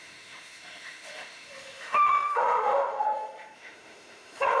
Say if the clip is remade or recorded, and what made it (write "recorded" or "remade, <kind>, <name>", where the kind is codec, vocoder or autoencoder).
remade, autoencoder, DAC-VAE